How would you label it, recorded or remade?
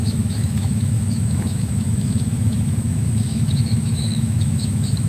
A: remade